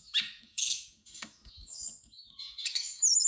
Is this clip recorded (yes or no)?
no